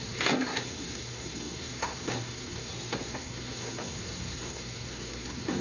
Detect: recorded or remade remade